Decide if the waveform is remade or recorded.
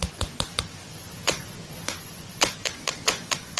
remade